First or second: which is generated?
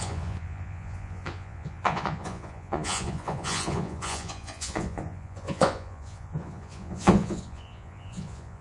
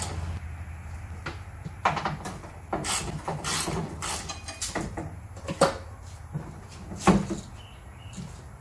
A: first